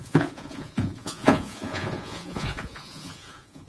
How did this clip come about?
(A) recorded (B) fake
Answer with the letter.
B